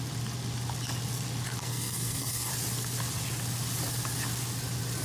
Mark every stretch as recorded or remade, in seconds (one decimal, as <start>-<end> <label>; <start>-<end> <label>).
0.0-1.6 recorded; 1.6-2.5 remade; 2.5-5.0 recorded